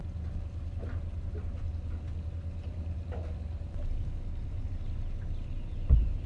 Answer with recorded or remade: recorded